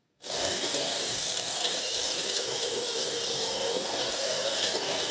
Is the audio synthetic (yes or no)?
yes